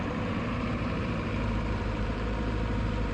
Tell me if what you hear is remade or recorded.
remade